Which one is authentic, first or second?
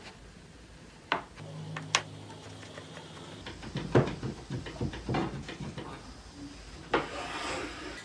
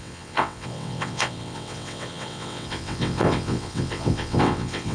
first